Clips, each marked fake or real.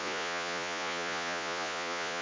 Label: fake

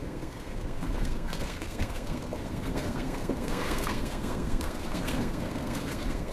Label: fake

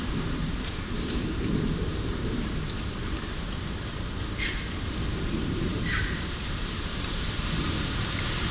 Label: fake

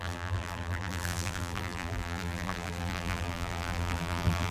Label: fake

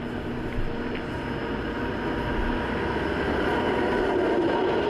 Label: real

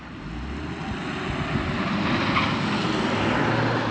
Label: real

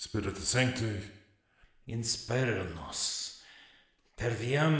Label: real